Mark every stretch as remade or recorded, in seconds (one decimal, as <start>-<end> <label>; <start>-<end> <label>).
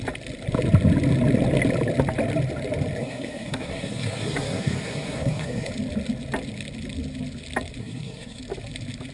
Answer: 0.0-3.0 recorded; 3.0-5.7 remade; 5.7-7.8 recorded; 7.8-8.4 remade; 8.4-9.1 recorded